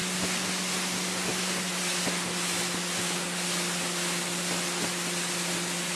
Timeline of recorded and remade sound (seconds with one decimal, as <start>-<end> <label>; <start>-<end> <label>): 0.0-6.0 recorded